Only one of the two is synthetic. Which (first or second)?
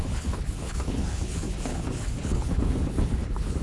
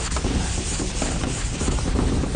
first